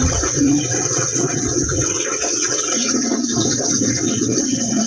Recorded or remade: remade